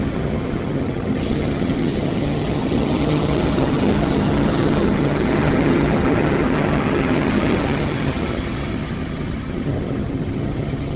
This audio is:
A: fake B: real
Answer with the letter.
A